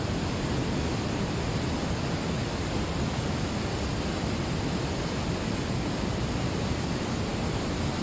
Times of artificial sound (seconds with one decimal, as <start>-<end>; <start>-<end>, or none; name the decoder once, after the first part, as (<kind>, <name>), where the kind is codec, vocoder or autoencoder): none